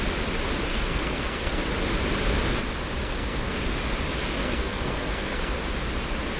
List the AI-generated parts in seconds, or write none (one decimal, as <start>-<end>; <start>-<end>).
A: 0.7-1.6; 3.0-3.6; 4.4-5.5